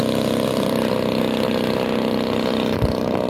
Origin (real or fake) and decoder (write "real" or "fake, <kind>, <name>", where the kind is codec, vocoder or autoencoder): real